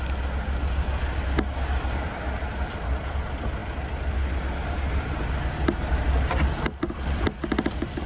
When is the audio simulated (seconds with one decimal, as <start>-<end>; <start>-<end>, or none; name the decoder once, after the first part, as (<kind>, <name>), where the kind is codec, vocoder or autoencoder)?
none